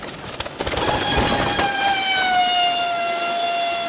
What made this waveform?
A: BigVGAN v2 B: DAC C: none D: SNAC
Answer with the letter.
C